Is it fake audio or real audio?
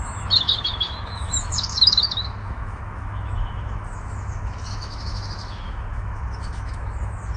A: fake